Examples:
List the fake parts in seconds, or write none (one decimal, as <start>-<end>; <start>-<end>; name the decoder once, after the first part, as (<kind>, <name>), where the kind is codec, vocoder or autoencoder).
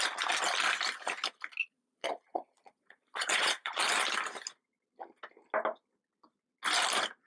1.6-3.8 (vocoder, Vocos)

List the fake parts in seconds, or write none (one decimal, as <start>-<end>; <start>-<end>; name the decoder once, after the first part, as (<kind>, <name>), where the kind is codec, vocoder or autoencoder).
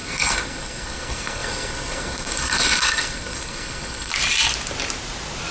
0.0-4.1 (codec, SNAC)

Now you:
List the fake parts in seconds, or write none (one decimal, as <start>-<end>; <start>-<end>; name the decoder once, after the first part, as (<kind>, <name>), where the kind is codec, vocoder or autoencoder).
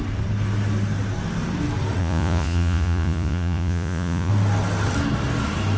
2.0-4.3 (vocoder, Vocos)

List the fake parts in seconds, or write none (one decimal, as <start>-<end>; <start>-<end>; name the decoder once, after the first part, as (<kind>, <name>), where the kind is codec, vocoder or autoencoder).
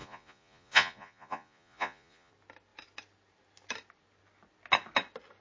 0.0-2.3 (vocoder, Vocos)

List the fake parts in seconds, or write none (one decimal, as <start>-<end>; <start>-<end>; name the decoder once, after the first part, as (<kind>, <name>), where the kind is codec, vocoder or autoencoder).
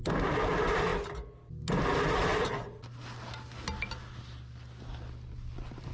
none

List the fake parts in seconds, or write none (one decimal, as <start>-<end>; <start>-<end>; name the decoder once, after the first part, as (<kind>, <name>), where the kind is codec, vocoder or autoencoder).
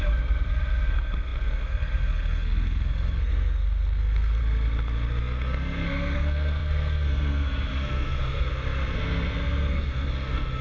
0.0-4.4 (codec, SNAC); 5.2-10.6